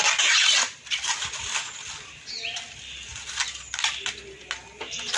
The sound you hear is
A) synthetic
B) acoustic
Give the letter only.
B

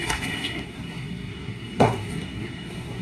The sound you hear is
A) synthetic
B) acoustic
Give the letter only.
A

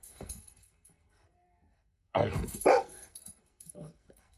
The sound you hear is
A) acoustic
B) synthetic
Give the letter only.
B